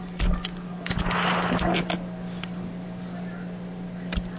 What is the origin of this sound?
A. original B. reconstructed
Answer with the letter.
A